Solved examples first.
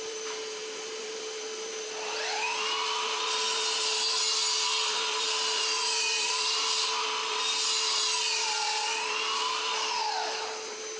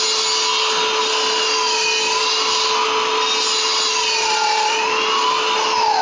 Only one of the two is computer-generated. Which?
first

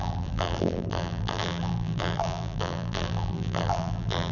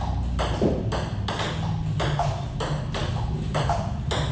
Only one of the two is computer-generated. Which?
first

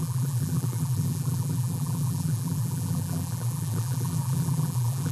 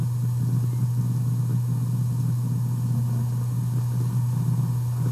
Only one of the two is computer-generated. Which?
first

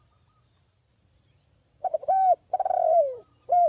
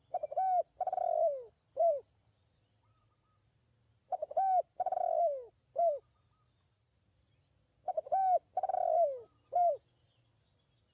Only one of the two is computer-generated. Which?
first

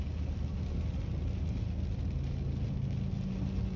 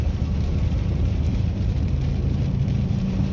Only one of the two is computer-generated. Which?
second